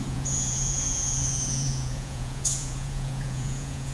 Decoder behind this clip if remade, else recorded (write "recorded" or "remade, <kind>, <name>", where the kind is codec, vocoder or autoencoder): remade, vocoder, Vocos